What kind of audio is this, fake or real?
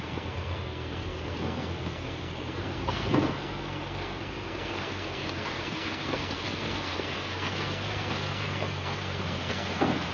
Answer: fake